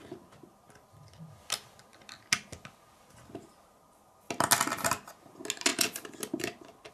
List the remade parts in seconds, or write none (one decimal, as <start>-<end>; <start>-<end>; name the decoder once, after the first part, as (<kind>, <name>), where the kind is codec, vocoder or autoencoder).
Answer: none